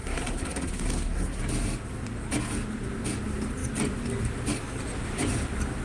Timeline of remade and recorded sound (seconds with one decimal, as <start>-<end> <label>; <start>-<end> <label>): 0.0-1.4 remade; 1.4-5.8 recorded